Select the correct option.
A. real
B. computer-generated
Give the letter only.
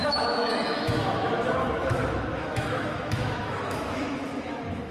B